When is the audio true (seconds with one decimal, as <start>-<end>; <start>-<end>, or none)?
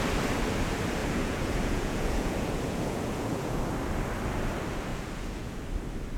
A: 0.0-1.0; 3.6-4.9; 5.6-6.2